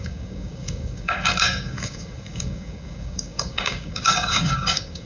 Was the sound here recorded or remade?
remade